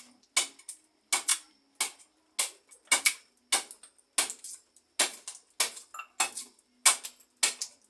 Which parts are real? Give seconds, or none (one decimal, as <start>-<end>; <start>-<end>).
0.0-7.9

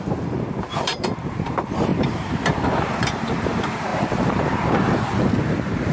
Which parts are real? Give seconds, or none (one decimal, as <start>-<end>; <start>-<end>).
none

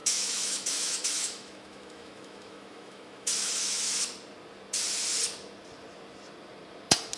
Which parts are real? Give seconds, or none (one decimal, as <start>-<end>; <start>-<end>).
4.0-7.2

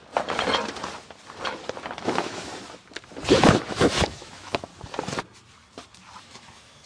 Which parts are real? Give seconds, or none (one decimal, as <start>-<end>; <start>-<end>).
0.0-2.0; 2.5-3.5; 4.7-6.2

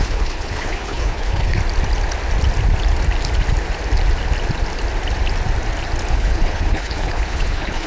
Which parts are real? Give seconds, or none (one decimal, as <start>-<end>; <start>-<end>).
1.6-6.1